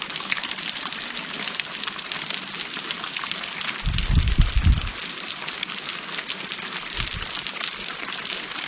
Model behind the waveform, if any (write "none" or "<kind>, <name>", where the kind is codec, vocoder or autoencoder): none